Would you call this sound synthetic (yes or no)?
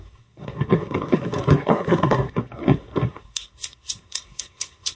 yes